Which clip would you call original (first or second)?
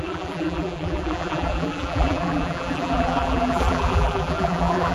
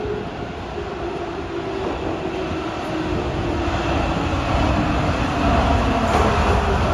second